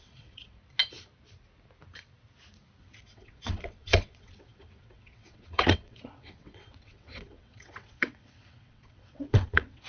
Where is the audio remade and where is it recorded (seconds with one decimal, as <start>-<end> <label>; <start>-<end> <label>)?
0.0-0.6 remade; 0.6-2.8 recorded; 2.8-9.9 remade